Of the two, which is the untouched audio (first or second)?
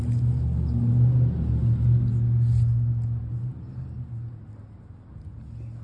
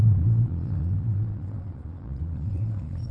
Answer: first